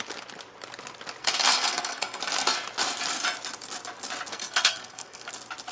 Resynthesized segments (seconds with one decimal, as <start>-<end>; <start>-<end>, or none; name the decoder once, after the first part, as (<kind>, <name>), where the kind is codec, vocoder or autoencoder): 1.2-2.2 (codec, SNAC); 4.3-5.3